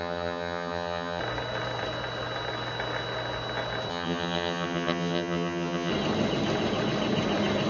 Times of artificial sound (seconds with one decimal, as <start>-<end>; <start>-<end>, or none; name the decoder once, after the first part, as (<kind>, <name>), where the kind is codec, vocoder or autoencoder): 0.0-1.2 (vocoder, HiFi-GAN); 3.9-5.9